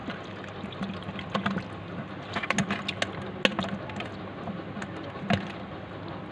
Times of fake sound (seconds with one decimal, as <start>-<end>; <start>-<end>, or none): none